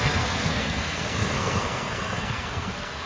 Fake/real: fake